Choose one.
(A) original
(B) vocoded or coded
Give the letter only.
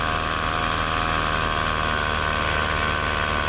A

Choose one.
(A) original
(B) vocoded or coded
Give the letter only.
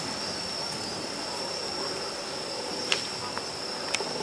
A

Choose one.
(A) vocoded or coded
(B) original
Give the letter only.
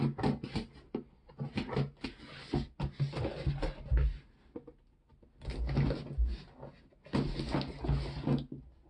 B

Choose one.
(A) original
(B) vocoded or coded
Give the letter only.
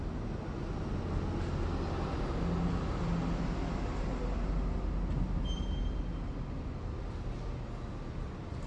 A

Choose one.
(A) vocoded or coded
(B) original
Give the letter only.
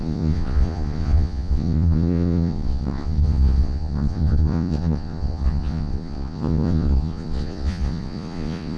A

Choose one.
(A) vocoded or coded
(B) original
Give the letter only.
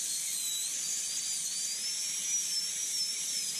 B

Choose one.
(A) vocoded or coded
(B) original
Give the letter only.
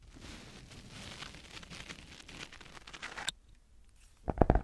B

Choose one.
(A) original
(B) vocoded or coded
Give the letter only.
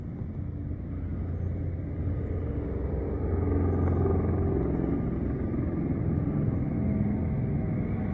A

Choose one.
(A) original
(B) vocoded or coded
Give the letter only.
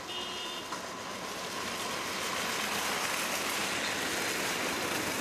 A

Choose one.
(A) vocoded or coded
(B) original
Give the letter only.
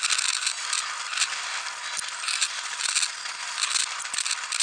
B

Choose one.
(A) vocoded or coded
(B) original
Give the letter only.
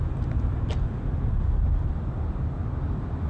B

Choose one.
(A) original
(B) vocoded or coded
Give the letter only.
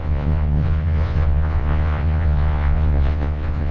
B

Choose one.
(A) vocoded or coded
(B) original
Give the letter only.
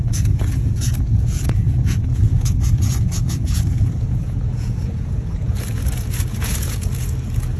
A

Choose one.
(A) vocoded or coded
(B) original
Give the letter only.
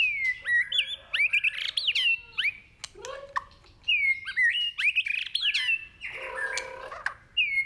B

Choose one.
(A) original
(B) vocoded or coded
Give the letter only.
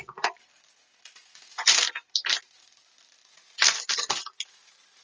A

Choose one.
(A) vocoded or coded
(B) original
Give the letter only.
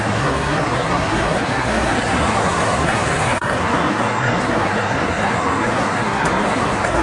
A